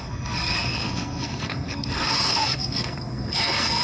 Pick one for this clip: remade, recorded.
remade